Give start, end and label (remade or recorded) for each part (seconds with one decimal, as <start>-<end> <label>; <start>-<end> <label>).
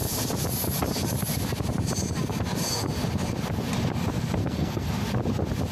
0.0-4.4 recorded; 4.4-4.9 remade; 4.9-5.7 recorded